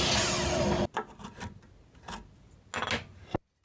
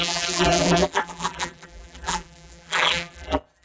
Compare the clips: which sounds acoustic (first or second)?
first